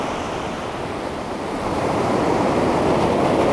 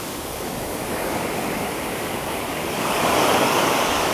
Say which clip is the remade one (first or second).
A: second